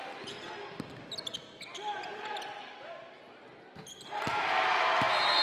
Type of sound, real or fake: real